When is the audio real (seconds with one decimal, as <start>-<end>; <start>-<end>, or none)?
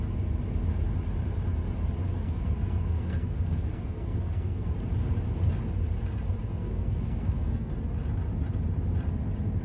0.0-2.1; 4.7-6.4; 7.7-9.6